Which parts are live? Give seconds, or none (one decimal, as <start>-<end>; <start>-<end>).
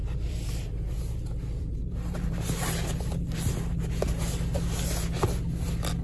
3.6-6.0